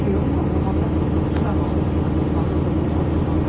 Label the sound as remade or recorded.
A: recorded